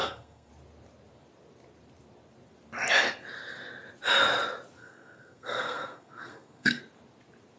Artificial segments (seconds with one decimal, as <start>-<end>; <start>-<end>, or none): 0.0-0.5; 4.8-6.8